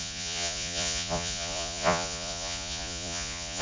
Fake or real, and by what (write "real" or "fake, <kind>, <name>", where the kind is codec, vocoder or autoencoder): fake, vocoder, Vocos